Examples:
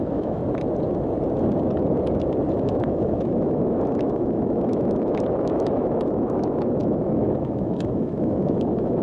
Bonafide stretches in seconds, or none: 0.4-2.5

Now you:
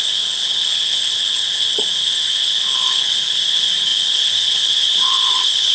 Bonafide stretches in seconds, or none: none

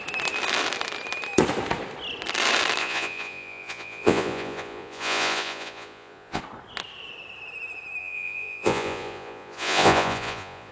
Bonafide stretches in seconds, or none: 0.0-2.8; 6.4-8.0

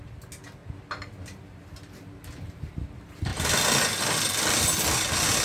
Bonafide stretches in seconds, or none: 0.0-5.4

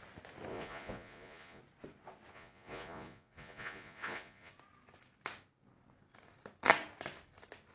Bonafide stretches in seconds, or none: 0.0-0.5; 1.6-2.3; 4.5-7.7

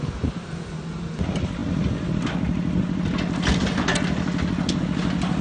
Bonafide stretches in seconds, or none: 0.0-5.4